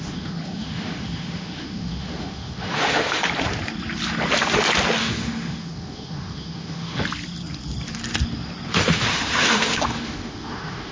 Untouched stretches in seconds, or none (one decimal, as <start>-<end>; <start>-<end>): 3.2-5.0; 7.0-8.7